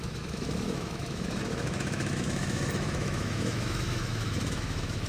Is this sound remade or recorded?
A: remade